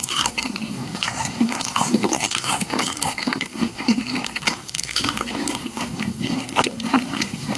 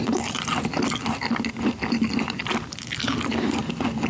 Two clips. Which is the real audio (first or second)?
second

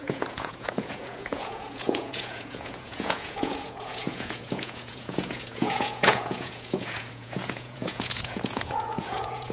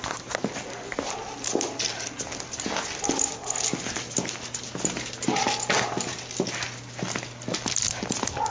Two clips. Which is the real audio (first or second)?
second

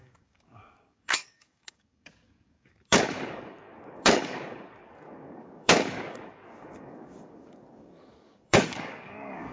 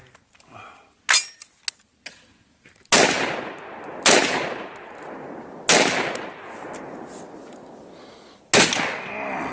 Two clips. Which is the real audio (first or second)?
second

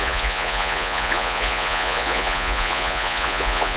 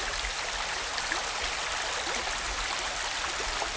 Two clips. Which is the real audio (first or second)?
second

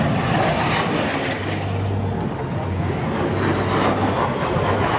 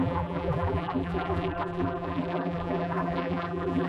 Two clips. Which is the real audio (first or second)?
first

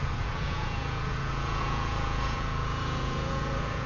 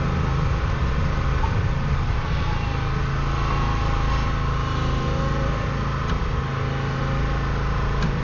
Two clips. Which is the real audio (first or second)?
second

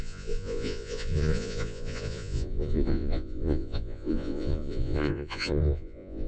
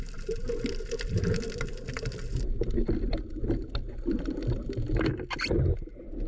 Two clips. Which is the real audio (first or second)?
second